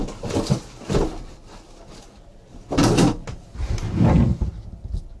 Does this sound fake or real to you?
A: real